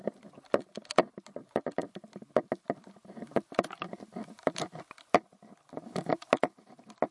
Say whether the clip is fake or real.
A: real